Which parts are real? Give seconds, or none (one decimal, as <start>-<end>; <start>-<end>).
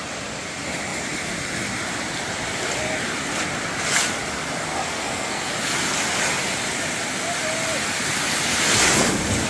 0.0-4.7; 5.5-9.5